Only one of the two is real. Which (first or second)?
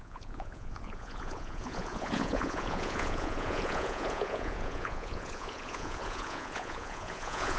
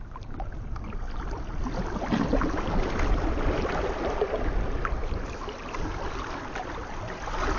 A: second